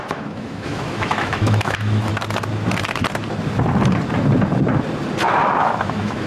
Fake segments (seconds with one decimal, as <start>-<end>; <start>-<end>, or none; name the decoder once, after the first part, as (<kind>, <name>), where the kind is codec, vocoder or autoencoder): 0.0-2.1 (autoencoder, DAC-VAE); 5.6-6.3